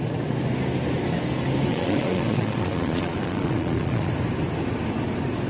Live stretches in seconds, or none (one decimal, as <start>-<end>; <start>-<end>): 0.0-1.7; 4.1-5.5